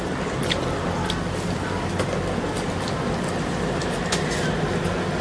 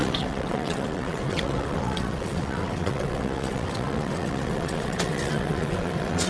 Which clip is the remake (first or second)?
second